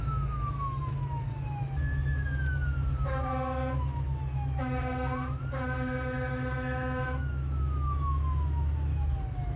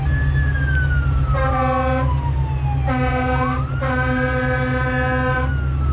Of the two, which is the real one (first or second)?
second